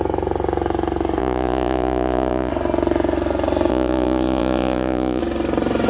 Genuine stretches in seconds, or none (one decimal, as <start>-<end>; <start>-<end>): 0.0-1.2; 2.5-3.7; 5.2-5.9